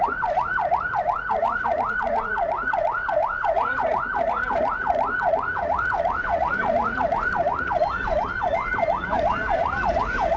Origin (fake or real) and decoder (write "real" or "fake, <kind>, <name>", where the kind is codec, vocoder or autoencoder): fake, vocoder, Vocos